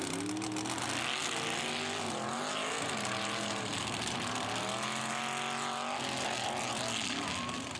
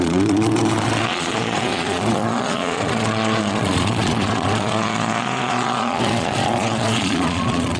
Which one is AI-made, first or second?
second